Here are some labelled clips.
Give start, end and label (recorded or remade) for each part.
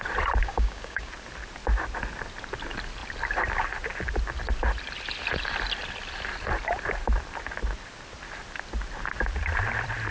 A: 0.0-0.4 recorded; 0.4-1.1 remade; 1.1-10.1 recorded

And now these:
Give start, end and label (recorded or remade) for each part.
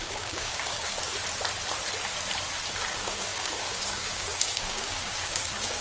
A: 0.0-1.1 remade; 1.1-2.7 recorded; 2.7-5.8 remade